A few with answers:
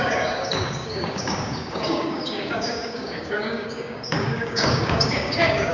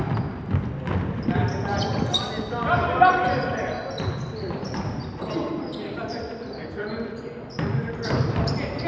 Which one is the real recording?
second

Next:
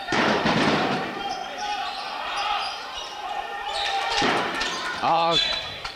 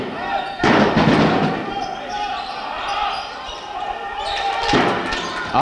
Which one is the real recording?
second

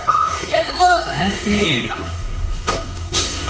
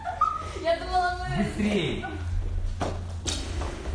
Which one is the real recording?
second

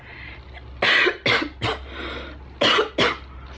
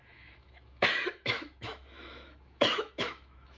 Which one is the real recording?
first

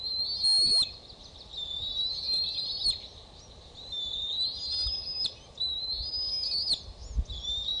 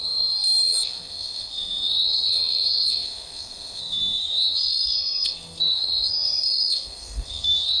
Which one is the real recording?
first